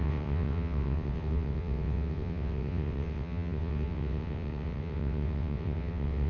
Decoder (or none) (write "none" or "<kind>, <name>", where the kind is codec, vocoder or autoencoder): vocoder, WaveNeXt